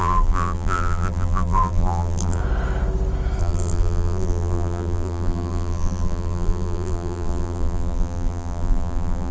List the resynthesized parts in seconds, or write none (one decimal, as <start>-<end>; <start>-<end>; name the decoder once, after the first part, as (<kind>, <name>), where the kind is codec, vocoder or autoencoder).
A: 0.0-2.4 (vocoder, BigVGAN v2); 3.4-9.3